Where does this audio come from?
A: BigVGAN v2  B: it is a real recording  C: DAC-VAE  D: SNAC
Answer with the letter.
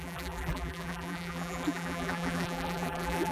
A